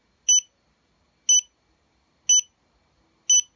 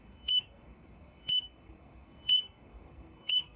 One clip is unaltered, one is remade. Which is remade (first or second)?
second